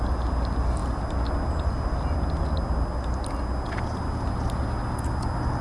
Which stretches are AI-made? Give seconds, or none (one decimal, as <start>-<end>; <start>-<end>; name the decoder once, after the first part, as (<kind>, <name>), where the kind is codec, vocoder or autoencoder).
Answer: none